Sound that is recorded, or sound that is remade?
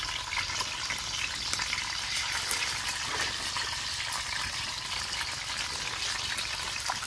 recorded